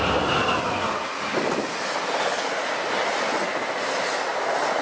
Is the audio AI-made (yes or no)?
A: no